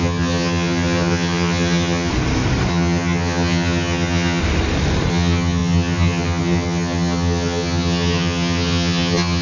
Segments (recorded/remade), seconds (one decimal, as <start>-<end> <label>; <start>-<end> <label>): 0.0-2.1 remade; 2.1-2.7 recorded; 2.7-4.4 remade; 4.4-5.1 recorded; 5.1-9.4 remade